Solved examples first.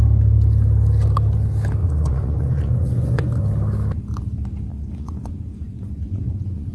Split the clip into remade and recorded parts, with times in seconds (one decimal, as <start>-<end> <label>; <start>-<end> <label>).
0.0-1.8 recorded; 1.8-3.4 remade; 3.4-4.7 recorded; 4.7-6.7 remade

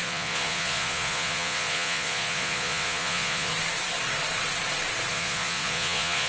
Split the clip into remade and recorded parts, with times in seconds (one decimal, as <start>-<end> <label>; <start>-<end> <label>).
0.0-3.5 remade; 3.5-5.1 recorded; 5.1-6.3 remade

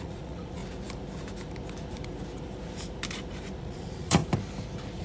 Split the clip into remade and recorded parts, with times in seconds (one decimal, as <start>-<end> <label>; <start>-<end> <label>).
0.0-0.6 remade; 0.6-3.6 recorded; 3.6-4.2 remade; 4.2-5.0 recorded

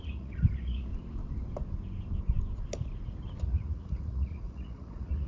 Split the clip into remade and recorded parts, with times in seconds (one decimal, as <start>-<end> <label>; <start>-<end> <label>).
0.0-0.9 remade; 0.9-3.4 recorded; 3.4-5.3 remade

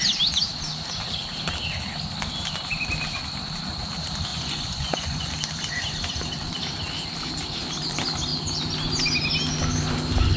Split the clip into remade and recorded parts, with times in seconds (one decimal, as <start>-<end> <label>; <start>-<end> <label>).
0.0-4.3 recorded; 4.3-5.3 remade; 5.3-10.4 recorded

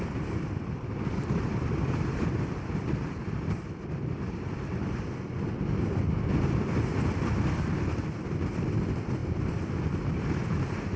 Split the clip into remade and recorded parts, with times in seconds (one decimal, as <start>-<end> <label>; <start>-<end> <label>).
0.0-11.0 recorded